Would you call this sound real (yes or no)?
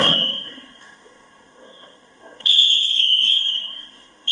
no